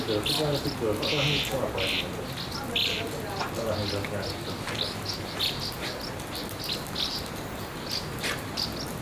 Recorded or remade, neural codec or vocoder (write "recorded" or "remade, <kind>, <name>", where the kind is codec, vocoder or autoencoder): recorded